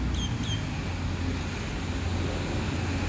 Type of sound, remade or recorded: recorded